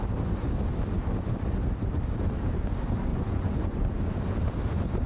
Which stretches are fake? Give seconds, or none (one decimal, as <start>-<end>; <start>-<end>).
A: 3.1-4.0